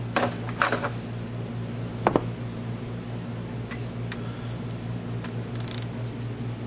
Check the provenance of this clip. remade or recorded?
recorded